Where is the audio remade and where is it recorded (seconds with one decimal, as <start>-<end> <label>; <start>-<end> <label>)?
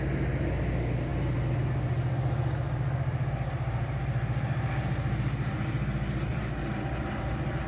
0.0-6.3 recorded; 6.3-7.7 remade